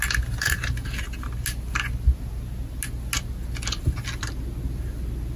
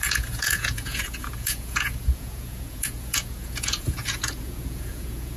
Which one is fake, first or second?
second